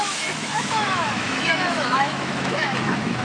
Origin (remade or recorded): remade